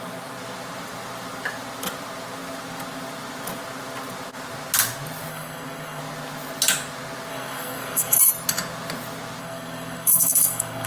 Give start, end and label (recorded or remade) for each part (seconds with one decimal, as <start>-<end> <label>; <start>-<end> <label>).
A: 0.0-5.3 recorded; 5.3-6.0 remade; 6.0-7.3 recorded; 7.3-8.3 remade; 8.3-9.4 recorded; 9.4-10.9 remade